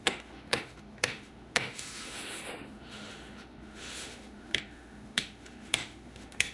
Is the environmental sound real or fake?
fake